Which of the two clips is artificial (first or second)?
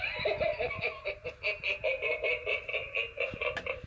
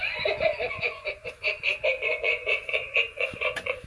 second